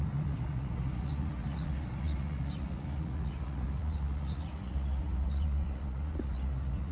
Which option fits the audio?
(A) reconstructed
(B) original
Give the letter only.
A